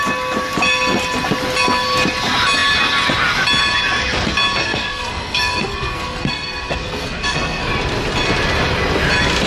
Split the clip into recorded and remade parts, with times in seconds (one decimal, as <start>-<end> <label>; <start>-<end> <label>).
0.0-4.6 recorded; 4.6-7.7 remade; 7.7-9.5 recorded